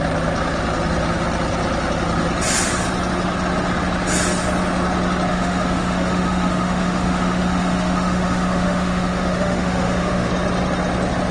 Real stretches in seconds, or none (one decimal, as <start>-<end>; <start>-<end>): 0.0-5.3; 10.3-11.3